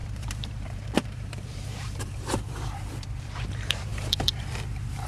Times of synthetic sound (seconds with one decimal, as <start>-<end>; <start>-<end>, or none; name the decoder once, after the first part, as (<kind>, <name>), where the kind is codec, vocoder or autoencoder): 0.0-5.1 (vocoder, BigVGAN v2)